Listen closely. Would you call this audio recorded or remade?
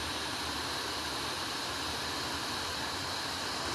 recorded